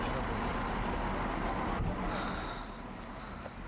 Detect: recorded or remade recorded